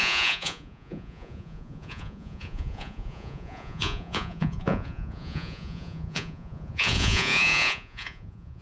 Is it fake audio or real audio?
fake